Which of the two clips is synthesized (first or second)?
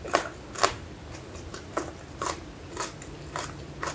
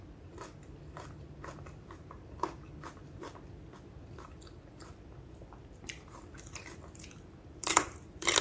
second